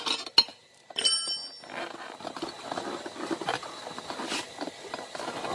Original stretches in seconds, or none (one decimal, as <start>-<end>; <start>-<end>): 0.0-5.5